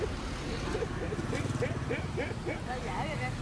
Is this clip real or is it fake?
real